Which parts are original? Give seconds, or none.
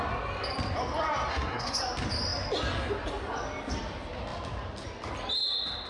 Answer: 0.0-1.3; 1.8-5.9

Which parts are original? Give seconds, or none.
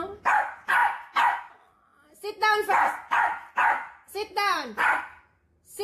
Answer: 0.0-5.8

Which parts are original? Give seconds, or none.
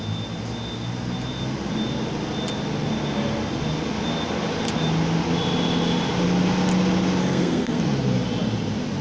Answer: 0.0-7.2; 7.8-9.0